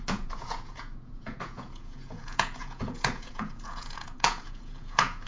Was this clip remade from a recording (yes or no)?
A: yes